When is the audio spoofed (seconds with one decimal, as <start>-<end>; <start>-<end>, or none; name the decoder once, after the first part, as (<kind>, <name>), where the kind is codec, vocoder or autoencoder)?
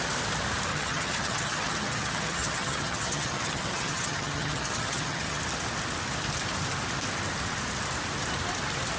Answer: 0.7-5.4 (vocoder, HiFi-GAN)